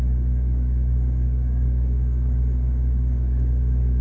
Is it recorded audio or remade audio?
remade